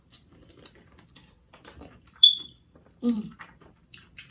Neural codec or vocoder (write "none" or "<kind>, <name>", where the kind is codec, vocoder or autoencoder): vocoder, BigVGAN v2